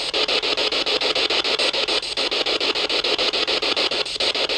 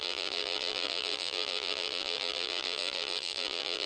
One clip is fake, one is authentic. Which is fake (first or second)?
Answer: second